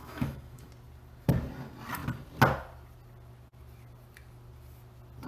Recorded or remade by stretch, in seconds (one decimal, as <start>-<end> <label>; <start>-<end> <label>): 0.0-0.7 remade; 0.7-5.3 recorded